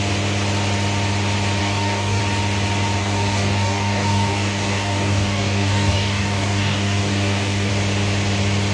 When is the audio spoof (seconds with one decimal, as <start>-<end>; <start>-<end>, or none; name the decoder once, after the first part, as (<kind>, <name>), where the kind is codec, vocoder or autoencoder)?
1.6-2.2 (codec, DAC); 3.0-7.7